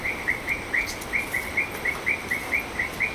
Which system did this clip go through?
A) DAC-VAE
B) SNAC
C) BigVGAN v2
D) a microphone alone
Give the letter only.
D